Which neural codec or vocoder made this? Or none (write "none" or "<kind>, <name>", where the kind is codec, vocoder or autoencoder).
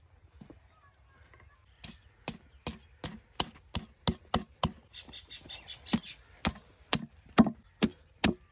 none